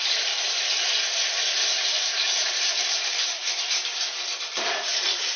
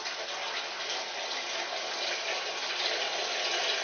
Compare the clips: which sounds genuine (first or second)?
second